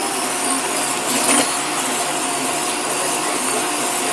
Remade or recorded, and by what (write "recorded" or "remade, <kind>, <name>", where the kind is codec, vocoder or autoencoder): recorded